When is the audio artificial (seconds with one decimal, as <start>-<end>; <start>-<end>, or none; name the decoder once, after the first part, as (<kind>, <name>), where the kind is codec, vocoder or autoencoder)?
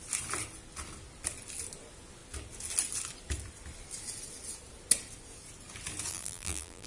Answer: 6.1-6.9 (vocoder, BigVGAN v2)